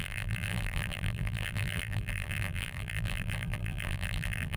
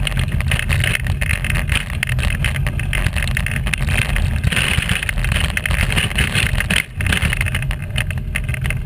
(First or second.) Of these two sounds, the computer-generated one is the first